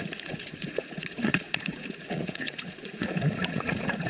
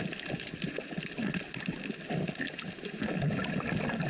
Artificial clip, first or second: first